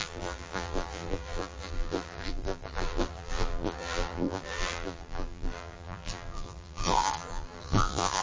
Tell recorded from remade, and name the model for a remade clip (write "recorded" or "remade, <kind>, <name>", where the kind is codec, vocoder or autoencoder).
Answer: remade, vocoder, BigVGAN v2